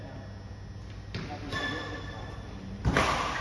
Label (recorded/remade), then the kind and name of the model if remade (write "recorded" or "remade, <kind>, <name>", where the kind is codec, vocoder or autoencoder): recorded